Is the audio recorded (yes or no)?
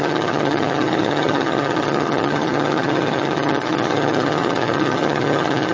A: no